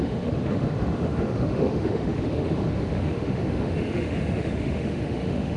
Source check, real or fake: fake